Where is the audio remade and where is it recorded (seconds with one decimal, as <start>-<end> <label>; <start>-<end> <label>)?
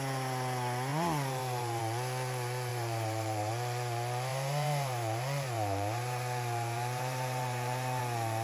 0.0-0.9 recorded; 0.9-1.8 remade; 1.8-2.7 recorded; 2.7-3.5 remade; 3.5-4.3 recorded; 4.3-8.0 remade; 8.0-8.4 recorded